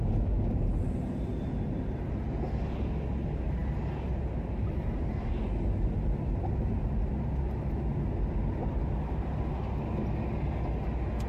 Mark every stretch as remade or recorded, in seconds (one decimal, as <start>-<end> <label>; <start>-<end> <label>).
0.0-11.3 recorded